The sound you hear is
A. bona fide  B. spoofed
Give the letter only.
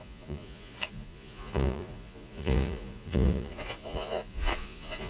B